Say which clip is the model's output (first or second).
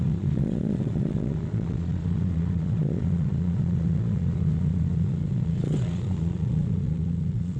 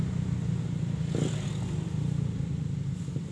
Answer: first